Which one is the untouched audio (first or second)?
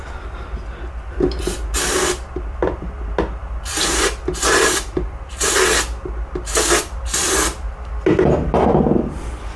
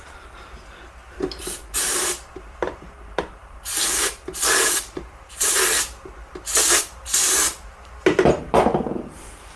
first